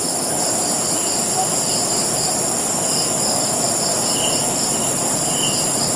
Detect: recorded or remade recorded